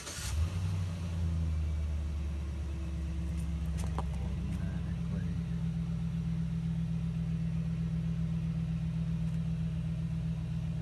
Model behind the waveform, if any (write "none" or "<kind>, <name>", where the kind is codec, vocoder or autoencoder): none